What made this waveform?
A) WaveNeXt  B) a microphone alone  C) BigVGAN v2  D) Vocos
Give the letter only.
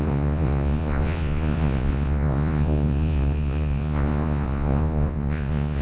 D